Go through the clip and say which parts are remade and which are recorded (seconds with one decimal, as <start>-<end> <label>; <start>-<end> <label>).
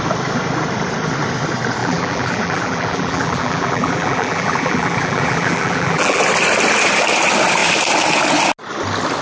0.0-1.8 recorded; 1.8-6.2 remade; 6.2-9.2 recorded